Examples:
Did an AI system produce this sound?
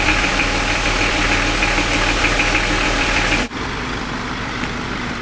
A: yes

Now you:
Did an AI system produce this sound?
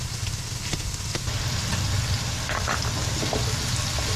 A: no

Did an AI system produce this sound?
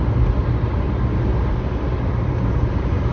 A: no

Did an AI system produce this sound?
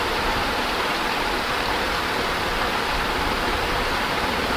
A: yes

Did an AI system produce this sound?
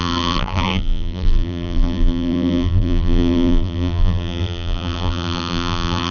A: yes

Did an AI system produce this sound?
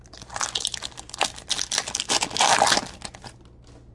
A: no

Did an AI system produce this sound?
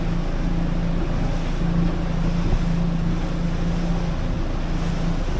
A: no